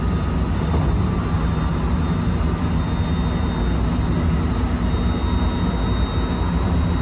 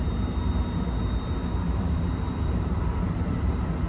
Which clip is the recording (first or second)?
first